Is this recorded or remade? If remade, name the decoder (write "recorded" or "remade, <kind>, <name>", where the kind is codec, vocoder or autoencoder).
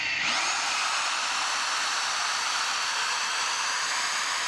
recorded